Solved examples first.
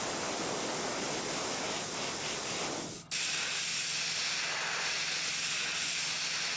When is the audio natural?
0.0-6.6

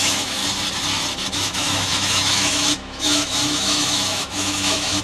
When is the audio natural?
0.4-1.3

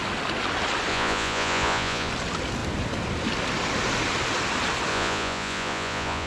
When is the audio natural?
0.0-0.9; 2.1-4.9

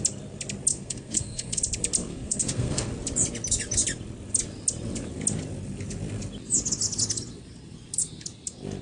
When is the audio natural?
0.0-0.7; 1.6-2.1; 2.9-8.8